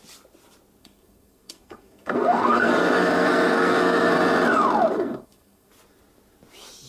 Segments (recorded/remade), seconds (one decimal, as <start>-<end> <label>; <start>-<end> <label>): 0.0-0.8 recorded; 0.8-4.2 remade; 4.2-4.9 recorded; 4.9-5.7 remade; 5.7-6.9 recorded